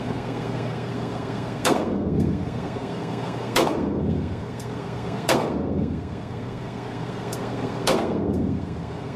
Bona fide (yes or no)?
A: no